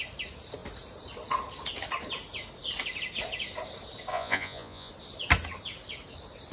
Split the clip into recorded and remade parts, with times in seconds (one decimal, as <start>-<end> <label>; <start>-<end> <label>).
0.0-4.1 recorded; 4.1-4.9 remade; 4.9-6.5 recorded